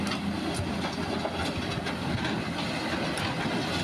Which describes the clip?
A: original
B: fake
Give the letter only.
A